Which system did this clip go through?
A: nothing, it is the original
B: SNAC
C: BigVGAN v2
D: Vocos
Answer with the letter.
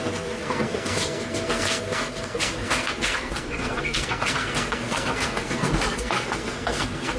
B